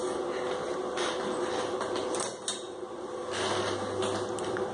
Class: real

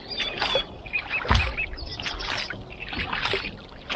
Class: real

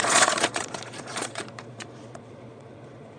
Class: fake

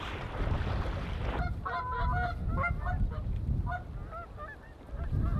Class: real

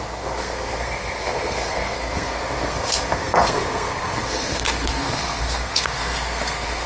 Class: fake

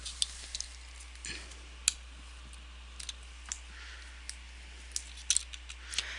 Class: real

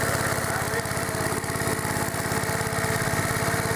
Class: real